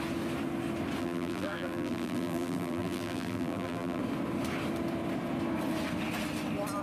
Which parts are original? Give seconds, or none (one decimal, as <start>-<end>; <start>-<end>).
0.0-1.0; 4.0-6.8